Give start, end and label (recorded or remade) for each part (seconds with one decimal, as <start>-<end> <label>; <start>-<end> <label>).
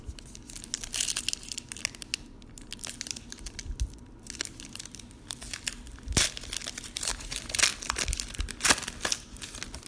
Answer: 0.0-9.9 recorded